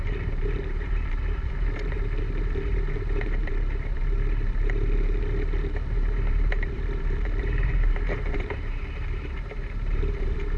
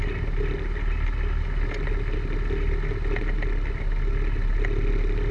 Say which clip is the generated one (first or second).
first